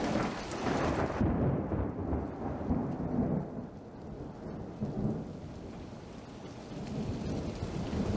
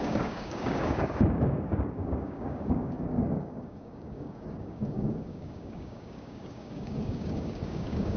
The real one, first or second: first